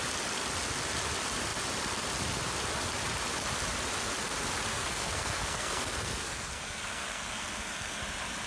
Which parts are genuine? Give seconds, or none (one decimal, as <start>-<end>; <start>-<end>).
0.0-4.7; 8.0-8.5

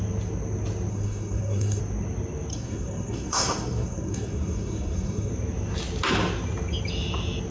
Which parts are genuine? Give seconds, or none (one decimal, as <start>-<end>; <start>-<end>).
0.0-0.9; 1.8-2.5; 5.3-7.5

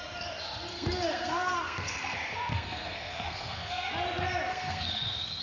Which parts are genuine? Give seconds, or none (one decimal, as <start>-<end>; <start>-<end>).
0.0-0.7; 3.9-4.5

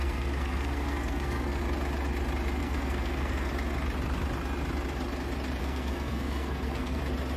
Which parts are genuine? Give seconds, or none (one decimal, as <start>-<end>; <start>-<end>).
1.6-2.6; 3.5-5.6; 7.0-7.4

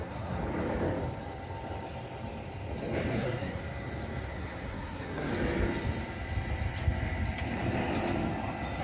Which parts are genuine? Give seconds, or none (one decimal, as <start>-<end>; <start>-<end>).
0.4-3.1; 3.6-4.3; 5.3-8.8

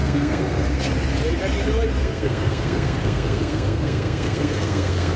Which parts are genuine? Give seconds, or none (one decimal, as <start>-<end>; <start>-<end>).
0.9-2.0

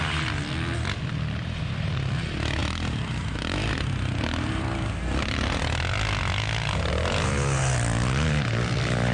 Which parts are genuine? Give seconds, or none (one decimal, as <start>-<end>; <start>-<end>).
0.0-9.1